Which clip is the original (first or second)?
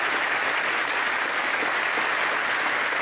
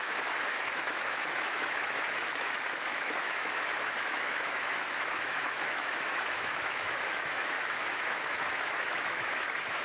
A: first